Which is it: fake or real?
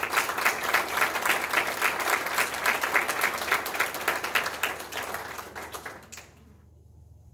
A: real